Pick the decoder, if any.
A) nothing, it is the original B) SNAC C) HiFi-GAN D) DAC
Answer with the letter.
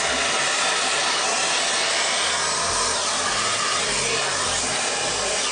A